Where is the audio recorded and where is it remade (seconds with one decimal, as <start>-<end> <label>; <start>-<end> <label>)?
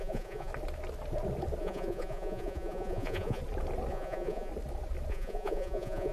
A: 0.0-0.5 remade; 0.5-1.6 recorded; 1.6-3.4 remade; 3.4-3.9 recorded; 3.9-4.5 remade; 4.5-5.1 recorded; 5.1-6.1 remade